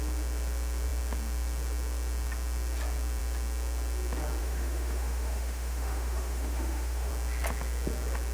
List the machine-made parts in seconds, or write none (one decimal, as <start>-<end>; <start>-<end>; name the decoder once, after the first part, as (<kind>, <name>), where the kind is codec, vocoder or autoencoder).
4.4-7.1 (autoencoder, DAC-VAE)